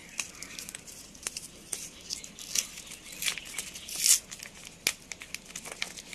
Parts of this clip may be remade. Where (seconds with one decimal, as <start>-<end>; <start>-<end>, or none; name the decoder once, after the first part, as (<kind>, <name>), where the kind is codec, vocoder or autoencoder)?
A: 0.0-2.3 (vocoder, BigVGAN v2)